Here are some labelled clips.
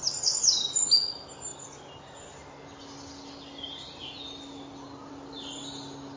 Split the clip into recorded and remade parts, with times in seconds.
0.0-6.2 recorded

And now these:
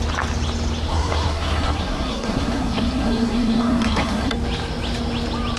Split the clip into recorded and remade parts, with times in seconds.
0.0-0.9 recorded; 0.9-4.3 remade; 4.3-5.6 recorded

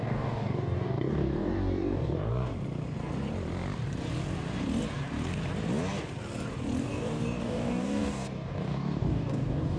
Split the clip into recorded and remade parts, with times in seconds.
0.0-2.5 remade; 2.5-6.8 recorded; 6.8-9.8 remade

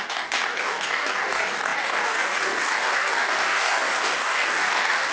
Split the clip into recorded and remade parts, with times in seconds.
0.0-5.1 remade

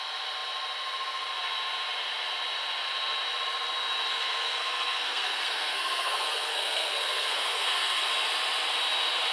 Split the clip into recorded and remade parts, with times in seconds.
0.0-4.1 recorded; 4.1-8.1 remade; 8.1-9.3 recorded

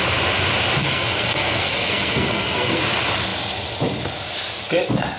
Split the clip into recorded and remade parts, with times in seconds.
0.0-0.8 recorded; 0.8-2.8 remade; 2.8-5.2 recorded